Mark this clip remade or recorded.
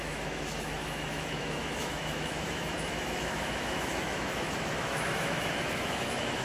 remade